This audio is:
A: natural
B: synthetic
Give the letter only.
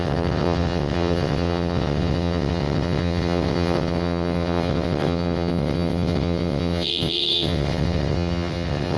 B